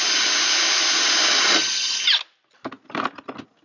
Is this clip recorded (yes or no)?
yes